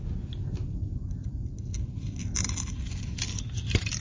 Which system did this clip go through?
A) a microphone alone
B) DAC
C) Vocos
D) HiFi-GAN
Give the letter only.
A